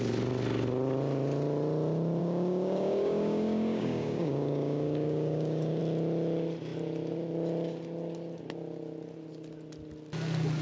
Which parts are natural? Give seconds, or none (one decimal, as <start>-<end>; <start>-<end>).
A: 0.0-2.2; 5.8-10.6